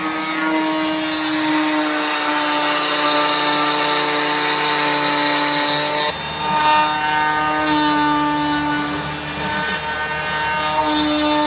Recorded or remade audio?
recorded